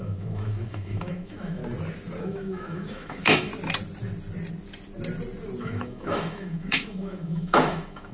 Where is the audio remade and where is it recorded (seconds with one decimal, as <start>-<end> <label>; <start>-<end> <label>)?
0.0-1.6 remade; 1.6-2.2 recorded; 2.2-3.5 remade; 3.5-5.6 recorded; 5.6-8.1 remade